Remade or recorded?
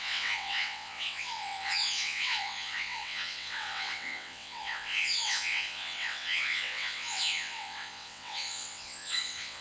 remade